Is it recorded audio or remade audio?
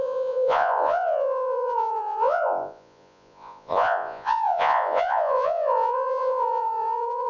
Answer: remade